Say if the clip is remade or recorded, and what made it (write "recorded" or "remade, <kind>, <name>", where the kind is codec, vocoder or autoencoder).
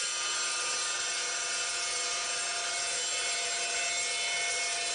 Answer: recorded